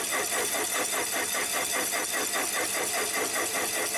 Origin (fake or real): real